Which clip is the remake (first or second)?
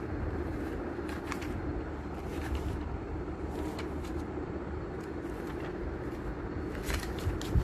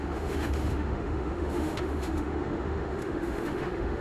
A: second